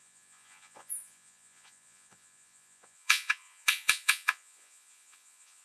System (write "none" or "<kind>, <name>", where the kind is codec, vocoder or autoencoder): vocoder, Vocos